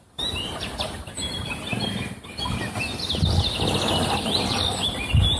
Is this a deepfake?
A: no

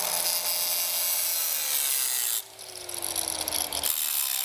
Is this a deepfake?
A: no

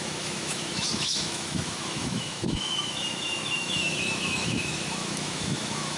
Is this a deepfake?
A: yes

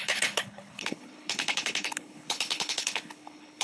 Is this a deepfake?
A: yes